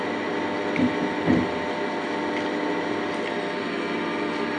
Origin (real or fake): real